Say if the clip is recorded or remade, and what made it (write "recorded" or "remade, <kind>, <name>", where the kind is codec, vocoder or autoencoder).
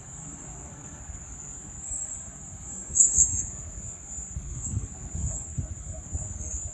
remade, codec, SNAC